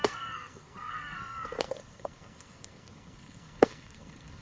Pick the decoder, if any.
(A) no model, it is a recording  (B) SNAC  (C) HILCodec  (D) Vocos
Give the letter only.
B